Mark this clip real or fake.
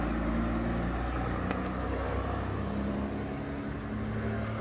real